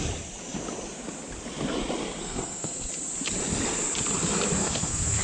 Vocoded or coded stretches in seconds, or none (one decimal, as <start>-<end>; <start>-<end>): 2.2-2.9; 4.6-5.2